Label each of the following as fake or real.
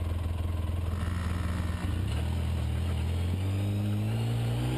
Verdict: real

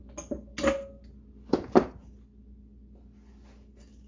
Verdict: real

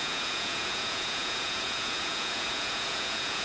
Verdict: fake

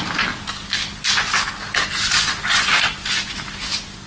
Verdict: real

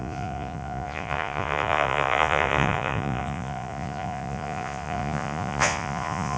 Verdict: fake